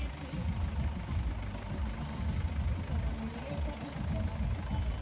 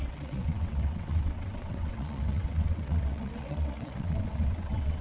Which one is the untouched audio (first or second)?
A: first